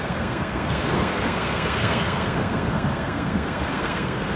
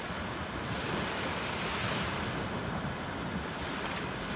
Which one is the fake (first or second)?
first